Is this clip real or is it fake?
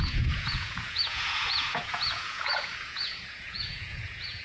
fake